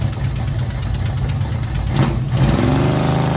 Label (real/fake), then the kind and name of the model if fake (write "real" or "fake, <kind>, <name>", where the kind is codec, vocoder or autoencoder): real